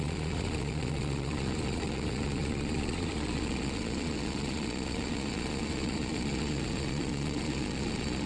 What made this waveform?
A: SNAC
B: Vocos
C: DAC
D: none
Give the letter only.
B